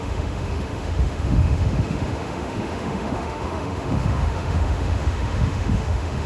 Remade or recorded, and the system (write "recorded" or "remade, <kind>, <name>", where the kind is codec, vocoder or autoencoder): remade, autoencoder, DAC-VAE